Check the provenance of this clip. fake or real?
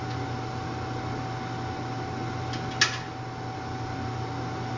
real